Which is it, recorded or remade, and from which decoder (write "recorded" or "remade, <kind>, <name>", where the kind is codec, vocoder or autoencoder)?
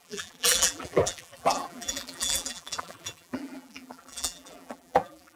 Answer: remade, vocoder, BigVGAN v2